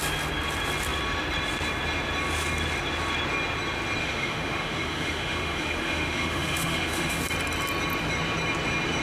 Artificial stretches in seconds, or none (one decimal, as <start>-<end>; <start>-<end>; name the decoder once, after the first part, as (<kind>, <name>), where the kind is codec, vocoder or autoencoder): 4.0-7.2 (autoencoder, DAC-VAE)